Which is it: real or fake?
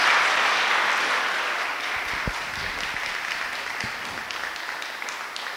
real